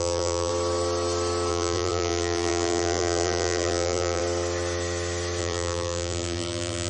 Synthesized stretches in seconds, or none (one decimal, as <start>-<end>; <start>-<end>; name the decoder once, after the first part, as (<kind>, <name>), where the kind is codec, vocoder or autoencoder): 0.0-0.5 (vocoder, BigVGAN v2); 1.5-4.2; 5.4-6.9